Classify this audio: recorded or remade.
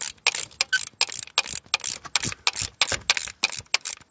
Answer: recorded